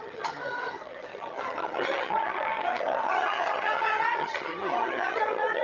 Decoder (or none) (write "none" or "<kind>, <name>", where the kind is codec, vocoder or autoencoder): vocoder, HiFi-GAN